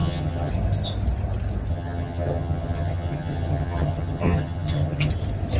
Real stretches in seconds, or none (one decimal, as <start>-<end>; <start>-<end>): 0.5-1.7; 5.1-5.6